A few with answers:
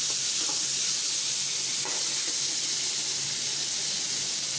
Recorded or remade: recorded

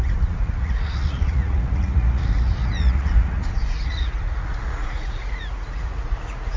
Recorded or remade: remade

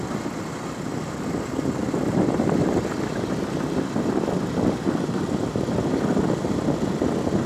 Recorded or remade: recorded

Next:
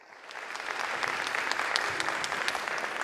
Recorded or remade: recorded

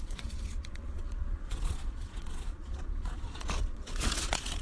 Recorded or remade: remade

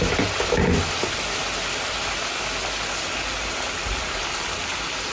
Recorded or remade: recorded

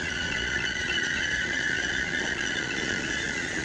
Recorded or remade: remade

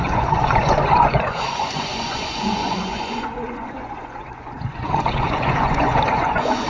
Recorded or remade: remade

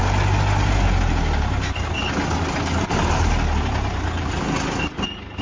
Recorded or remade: recorded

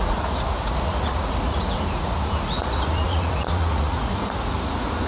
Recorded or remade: remade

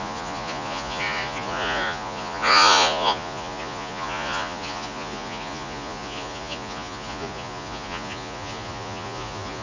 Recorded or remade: remade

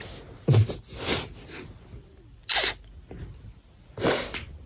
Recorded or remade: recorded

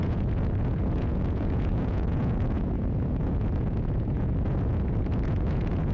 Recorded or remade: remade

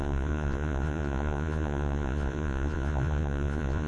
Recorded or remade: remade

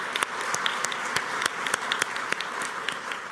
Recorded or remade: recorded